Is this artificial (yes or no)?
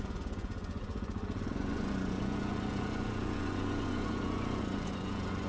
yes